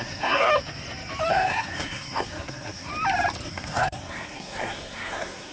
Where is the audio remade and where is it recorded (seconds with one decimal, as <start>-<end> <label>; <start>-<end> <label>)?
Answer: 0.0-0.5 remade; 0.5-1.3 recorded; 1.3-2.9 remade; 2.9-3.5 recorded; 3.5-5.5 remade